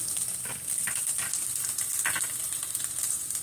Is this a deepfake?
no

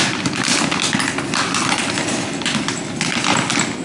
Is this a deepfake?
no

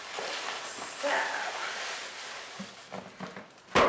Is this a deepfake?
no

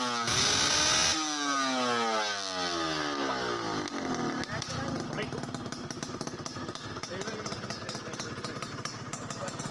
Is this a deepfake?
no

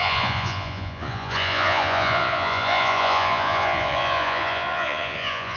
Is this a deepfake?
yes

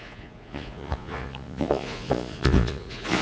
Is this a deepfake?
yes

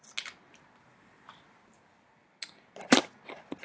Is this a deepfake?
no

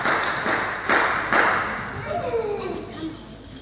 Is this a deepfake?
no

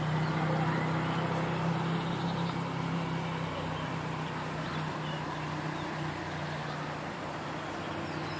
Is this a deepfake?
no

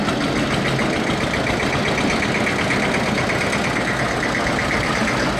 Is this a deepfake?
no